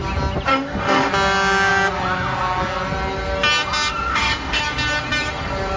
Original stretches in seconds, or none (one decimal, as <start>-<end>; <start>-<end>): 0.0-0.5; 1.1-4.1; 4.6-5.8